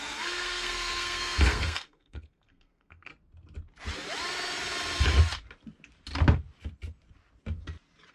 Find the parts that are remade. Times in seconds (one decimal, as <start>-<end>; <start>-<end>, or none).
0.0-3.1